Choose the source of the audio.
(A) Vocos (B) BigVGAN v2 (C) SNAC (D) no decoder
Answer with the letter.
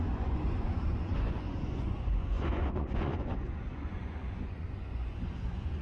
A